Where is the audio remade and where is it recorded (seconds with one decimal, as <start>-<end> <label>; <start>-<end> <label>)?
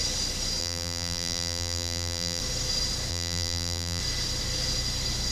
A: 0.0-0.6 recorded; 0.6-2.4 remade; 2.4-3.1 recorded; 3.1-4.0 remade; 4.0-5.3 recorded